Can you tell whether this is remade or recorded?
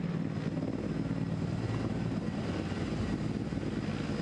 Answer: recorded